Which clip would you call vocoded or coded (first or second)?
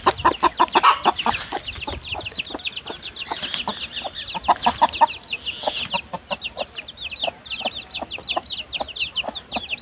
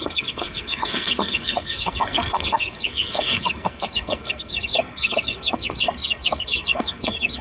second